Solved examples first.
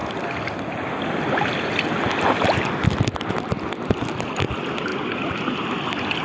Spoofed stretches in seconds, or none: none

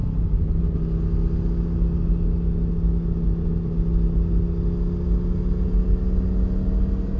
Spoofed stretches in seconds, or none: none

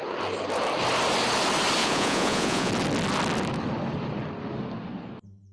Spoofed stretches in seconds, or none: 1.8-2.7 (vocoder, Vocos)

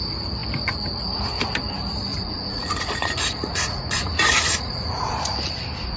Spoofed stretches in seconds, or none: 2.1-5.2 (vocoder, Vocos)

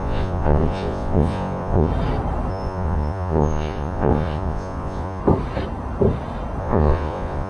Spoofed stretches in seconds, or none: 0.0-1.9 (vocoder, Vocos); 2.5-5.2; 6.6-7.5

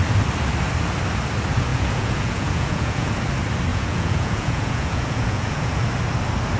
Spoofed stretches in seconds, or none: 1.7-3.1 (vocoder, Vocos); 3.7-5.8